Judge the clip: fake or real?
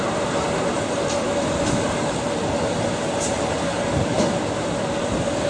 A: real